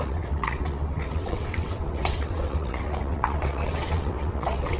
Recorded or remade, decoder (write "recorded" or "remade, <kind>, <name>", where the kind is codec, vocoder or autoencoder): remade, vocoder, WaveNeXt